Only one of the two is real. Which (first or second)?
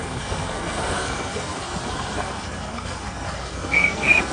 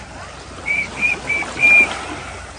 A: second